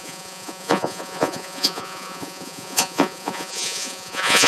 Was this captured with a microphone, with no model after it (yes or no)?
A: no